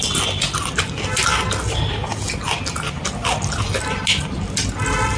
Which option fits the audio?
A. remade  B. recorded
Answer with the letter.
B